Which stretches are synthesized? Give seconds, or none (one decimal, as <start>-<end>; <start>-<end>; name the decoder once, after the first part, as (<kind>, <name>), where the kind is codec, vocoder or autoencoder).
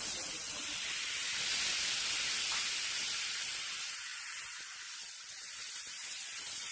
none